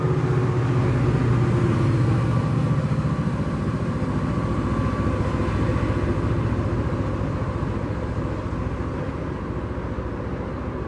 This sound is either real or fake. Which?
real